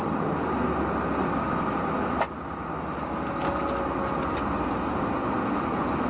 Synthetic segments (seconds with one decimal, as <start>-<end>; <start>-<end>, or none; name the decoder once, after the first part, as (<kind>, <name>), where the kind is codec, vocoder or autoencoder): none